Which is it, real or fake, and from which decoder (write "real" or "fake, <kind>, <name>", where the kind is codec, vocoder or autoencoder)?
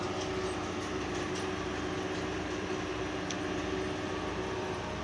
real